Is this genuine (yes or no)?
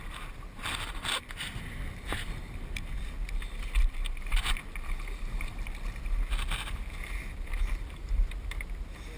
yes